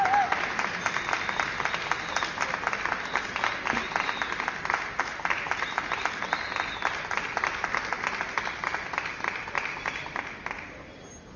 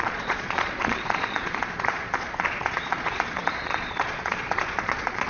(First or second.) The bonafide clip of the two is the first